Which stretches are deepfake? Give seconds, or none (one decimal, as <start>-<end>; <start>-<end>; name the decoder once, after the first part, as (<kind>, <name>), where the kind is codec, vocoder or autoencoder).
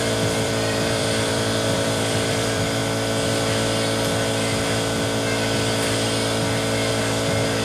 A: 0.0-2.8 (vocoder, BigVGAN v2); 6.9-7.6